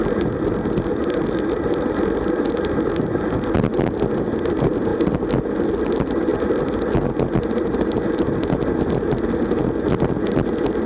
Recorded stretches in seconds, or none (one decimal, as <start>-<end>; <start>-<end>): 0.0-10.9